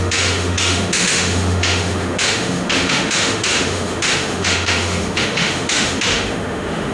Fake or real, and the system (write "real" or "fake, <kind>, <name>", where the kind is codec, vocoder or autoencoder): fake, autoencoder, DAC-VAE